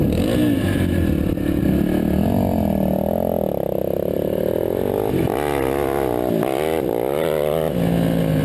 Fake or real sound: real